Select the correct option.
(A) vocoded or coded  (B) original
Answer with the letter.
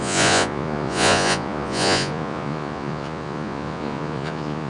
A